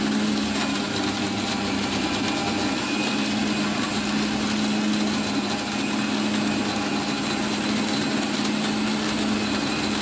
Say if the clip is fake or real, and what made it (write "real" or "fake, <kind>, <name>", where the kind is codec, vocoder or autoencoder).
real